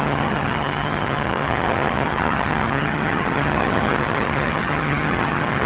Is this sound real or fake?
fake